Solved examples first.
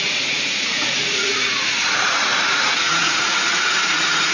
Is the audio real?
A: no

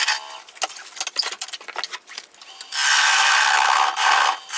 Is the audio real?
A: yes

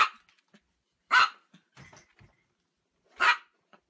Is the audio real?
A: yes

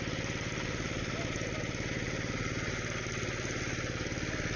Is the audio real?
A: yes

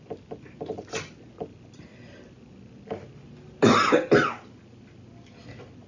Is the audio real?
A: yes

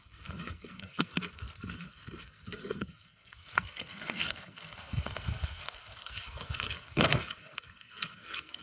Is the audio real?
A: no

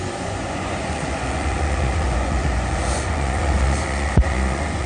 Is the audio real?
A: no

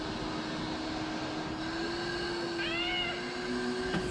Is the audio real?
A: yes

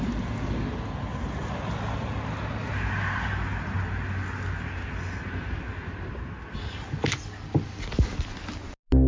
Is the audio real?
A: yes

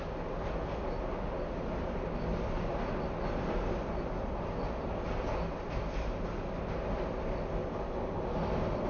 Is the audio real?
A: yes